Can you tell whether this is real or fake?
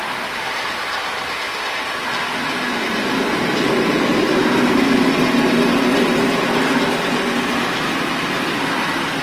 real